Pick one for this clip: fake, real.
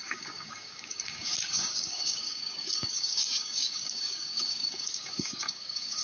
fake